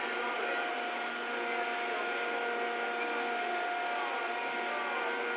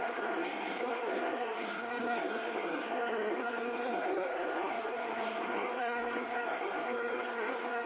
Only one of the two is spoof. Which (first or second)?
second